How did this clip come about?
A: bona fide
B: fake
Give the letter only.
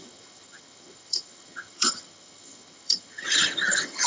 B